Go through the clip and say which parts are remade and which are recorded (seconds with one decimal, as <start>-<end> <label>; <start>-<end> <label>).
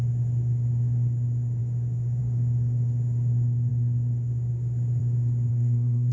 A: 0.0-5.5 recorded; 5.5-6.1 remade